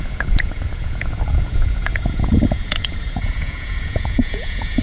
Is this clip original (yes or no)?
no